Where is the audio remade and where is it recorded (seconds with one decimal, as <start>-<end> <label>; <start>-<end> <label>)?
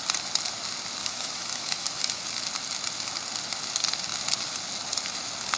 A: 0.0-1.0 recorded; 1.0-2.2 remade; 2.2-5.6 recorded